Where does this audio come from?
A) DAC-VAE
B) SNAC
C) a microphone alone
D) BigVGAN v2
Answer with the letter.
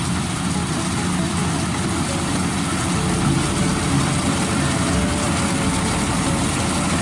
C